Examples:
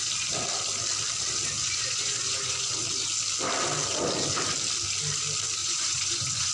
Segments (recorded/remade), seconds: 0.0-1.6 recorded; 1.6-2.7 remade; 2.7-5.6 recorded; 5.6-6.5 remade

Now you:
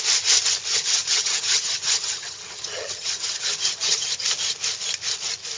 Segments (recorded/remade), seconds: 0.0-0.7 recorded; 0.7-4.1 remade; 4.1-5.6 recorded